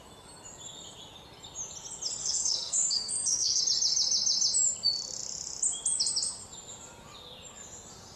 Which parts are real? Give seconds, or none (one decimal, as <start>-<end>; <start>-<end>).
0.0-2.2; 3.6-8.2